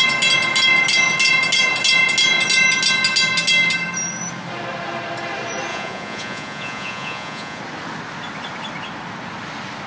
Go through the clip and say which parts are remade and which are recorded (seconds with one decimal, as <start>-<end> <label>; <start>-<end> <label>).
0.0-5.7 recorded; 5.7-7.6 remade; 7.6-9.9 recorded